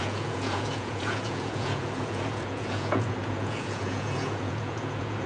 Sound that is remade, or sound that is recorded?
remade